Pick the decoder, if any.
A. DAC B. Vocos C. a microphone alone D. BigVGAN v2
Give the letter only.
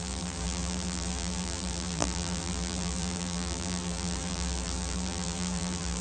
D